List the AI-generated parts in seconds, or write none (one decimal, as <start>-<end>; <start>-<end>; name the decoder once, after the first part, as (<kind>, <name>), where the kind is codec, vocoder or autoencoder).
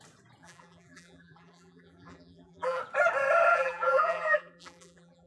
0.4-2.8 (vocoder, BigVGAN v2); 3.5-5.3